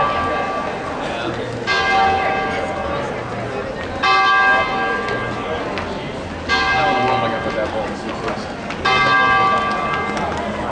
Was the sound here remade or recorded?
recorded